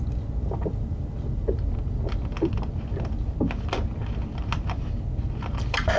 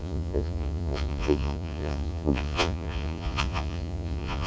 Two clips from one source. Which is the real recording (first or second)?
first